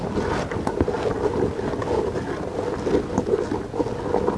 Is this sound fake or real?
real